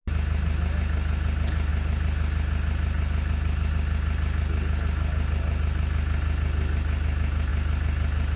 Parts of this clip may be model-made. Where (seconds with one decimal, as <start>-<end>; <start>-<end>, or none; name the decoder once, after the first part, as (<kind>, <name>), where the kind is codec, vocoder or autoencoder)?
none